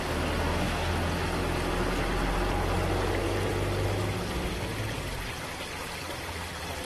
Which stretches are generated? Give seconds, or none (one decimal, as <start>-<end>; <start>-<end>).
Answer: 0.4-0.9